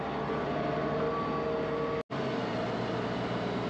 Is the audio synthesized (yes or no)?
no